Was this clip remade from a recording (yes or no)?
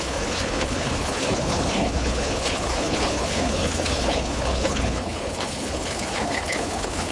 yes